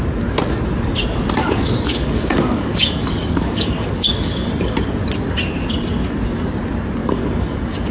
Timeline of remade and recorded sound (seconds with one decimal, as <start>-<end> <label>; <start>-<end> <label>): 0.0-1.4 recorded; 1.4-4.5 remade; 4.5-7.0 recorded; 7.0-7.9 remade